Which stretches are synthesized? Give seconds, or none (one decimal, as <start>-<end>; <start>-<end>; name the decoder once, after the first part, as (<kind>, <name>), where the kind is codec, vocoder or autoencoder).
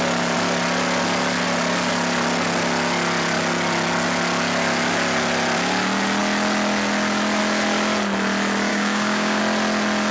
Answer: 8.7-9.4 (codec, DAC)